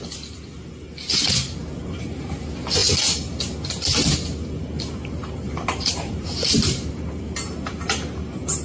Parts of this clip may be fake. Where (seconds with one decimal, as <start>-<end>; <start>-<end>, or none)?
5.0-7.0